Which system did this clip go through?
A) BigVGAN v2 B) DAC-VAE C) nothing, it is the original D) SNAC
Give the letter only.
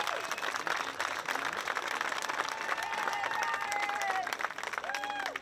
C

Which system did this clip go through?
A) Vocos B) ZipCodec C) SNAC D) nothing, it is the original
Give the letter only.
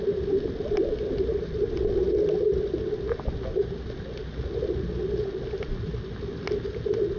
D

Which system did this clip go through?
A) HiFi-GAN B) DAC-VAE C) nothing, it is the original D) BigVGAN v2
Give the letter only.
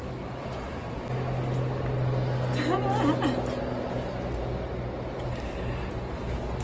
C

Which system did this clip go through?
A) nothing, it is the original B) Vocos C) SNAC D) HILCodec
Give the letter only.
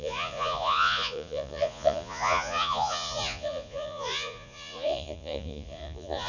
B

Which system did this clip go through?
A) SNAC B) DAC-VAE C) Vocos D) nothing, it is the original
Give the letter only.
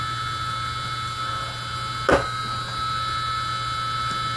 D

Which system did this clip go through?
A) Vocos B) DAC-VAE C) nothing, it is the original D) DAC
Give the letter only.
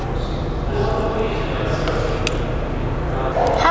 C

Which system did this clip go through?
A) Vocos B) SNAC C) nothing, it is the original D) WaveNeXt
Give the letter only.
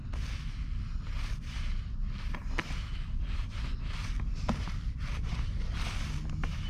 C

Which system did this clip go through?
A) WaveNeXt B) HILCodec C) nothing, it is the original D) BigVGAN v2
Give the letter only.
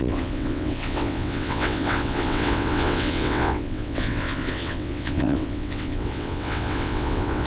A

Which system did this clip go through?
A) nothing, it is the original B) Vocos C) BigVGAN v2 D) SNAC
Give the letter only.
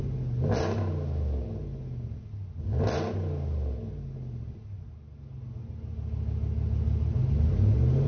A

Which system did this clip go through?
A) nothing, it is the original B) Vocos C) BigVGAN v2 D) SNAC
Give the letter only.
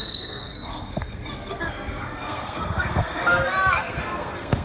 D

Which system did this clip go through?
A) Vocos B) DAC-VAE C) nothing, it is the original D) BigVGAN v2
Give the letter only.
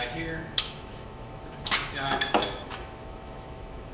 B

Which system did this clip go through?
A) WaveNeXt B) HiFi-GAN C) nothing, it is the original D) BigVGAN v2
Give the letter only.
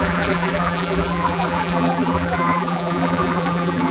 D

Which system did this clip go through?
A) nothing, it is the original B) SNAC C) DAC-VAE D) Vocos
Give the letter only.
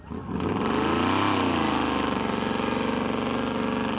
A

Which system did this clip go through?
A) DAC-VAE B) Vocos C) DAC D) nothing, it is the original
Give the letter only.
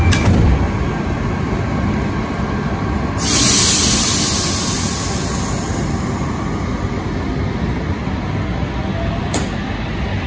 D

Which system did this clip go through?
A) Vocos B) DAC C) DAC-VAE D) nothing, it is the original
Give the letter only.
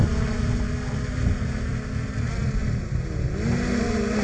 D